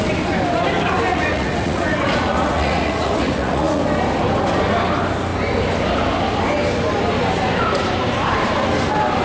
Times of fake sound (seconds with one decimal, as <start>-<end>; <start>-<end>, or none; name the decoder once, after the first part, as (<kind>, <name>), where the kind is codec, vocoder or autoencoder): 1.1-3.8 (vocoder, Vocos)